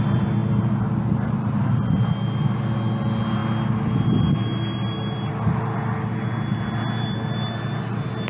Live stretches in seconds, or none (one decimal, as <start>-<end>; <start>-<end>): 0.0-8.3

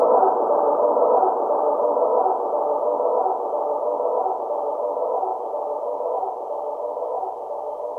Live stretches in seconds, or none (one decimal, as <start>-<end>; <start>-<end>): 2.1-4.4

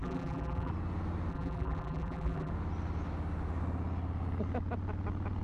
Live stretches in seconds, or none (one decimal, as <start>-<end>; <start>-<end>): 0.7-1.3; 2.5-5.4

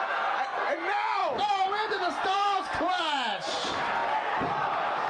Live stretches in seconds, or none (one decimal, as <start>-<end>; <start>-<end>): 4.0-4.5

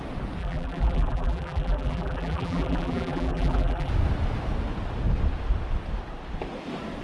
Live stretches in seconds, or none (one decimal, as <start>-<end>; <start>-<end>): 0.0-0.4; 3.9-7.0

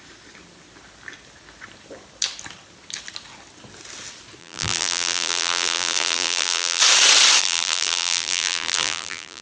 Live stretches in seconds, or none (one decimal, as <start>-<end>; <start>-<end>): 0.0-4.4; 6.8-7.4